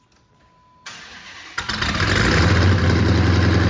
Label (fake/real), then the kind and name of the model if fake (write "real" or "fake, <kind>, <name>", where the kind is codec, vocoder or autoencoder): real